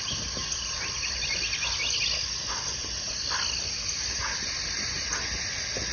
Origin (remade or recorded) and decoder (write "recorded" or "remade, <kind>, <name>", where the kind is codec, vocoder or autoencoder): recorded